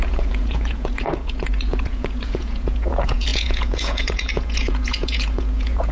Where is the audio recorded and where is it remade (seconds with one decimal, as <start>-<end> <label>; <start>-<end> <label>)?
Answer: 0.0-5.9 remade